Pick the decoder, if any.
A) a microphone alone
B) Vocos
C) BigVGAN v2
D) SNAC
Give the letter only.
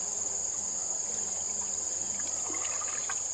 A